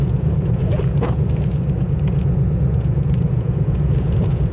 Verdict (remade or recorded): remade